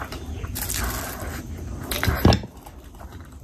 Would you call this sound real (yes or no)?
yes